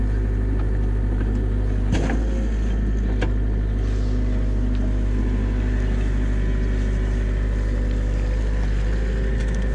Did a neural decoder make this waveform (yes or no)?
no